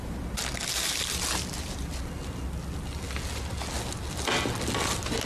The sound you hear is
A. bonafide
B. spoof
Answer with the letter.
A